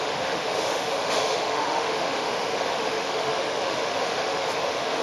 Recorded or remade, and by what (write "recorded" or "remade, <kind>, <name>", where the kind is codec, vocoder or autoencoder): remade, autoencoder, DAC-VAE